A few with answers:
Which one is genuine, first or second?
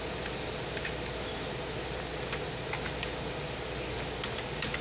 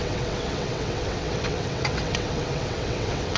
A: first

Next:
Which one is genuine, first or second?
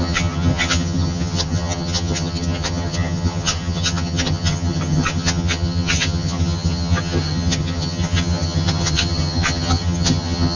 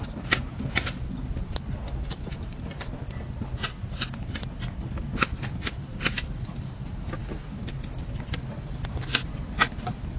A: second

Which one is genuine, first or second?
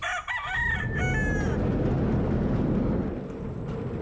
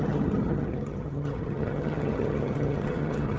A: first